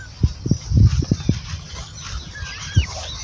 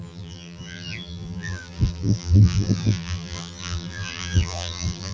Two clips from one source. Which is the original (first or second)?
first